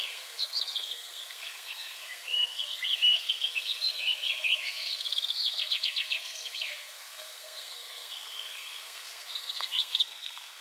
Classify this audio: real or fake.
fake